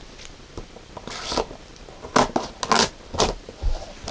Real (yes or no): yes